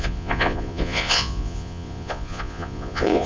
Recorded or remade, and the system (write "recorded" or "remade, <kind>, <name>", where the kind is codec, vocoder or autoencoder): remade, vocoder, Vocos